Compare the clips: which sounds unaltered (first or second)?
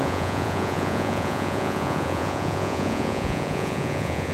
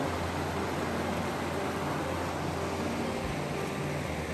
second